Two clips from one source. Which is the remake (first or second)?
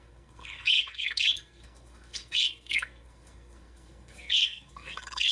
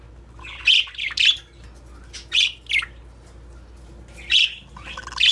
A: first